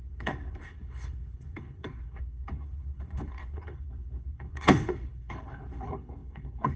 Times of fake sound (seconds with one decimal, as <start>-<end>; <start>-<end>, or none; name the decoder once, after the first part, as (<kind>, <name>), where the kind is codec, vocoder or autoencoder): 0.0-6.8 (codec, HILCodec)